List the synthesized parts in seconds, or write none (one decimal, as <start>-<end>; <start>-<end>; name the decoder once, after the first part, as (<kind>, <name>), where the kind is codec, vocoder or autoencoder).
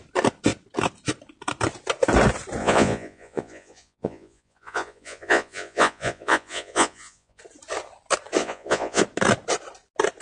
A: 2.6-7.4 (vocoder, Vocos); 8.4-9.0